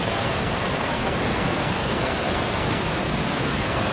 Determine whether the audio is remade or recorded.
remade